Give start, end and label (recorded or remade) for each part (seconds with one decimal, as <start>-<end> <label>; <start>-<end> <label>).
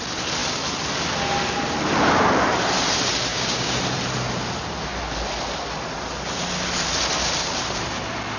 0.0-3.3 recorded; 3.3-3.8 remade; 3.8-8.4 recorded